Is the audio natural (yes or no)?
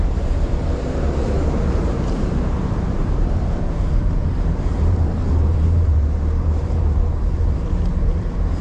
no